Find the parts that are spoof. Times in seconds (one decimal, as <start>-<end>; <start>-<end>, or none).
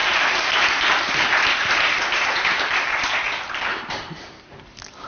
0.0-0.8; 1.6-2.7; 3.7-4.6